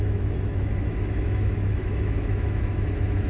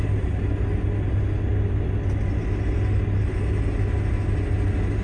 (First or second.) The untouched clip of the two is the second